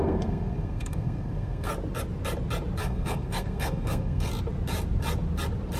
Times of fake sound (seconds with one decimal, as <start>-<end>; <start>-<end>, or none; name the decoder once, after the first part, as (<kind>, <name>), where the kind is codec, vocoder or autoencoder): 0.0-1.7 (codec, SNAC); 2.8-4.3